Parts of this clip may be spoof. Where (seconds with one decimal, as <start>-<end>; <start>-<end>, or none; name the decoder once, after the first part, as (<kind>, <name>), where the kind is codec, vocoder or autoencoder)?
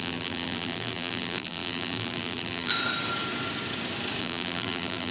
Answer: 0.0-2.7 (vocoder, BigVGAN v2); 4.2-5.1